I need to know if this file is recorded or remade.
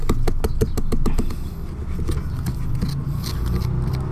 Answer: recorded